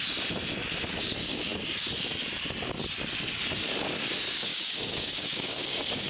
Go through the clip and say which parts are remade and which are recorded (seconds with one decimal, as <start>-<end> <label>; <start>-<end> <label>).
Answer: 0.0-4.5 recorded; 4.5-6.1 remade